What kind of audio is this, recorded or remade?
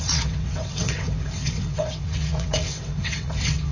remade